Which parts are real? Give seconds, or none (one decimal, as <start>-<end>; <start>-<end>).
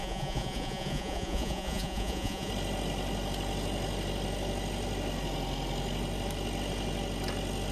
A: 2.5-7.7